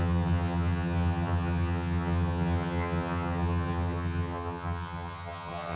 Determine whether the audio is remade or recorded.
remade